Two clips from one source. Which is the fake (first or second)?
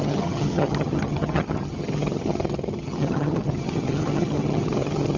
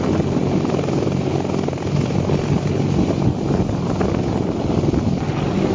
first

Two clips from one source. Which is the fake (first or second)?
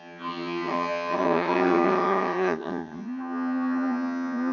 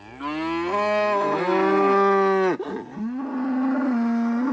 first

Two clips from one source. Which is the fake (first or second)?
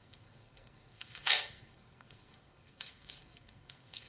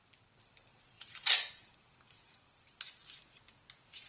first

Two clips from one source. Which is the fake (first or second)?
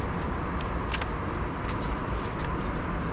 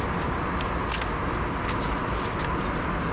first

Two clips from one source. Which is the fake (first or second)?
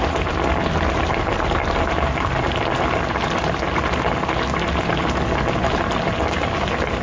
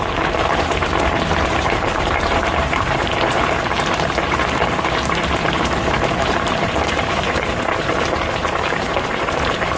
second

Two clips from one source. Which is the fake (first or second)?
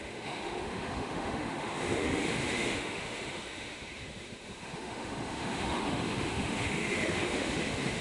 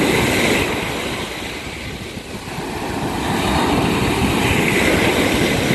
first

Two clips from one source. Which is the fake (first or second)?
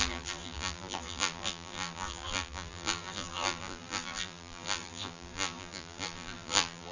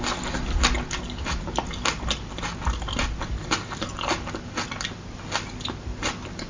first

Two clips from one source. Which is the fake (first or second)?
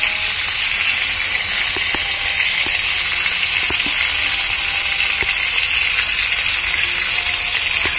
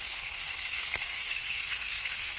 second